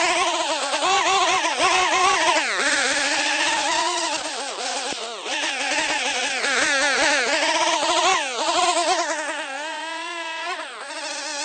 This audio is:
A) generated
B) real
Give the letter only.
A